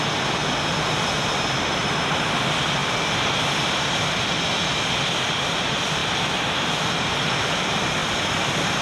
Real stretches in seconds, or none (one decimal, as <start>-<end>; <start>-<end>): 0.4-2.2; 2.8-3.7; 8.0-8.8